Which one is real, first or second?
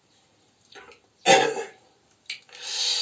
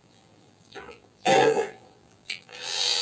first